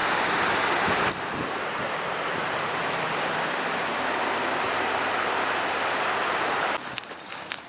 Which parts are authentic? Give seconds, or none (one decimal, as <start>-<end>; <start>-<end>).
0.0-7.7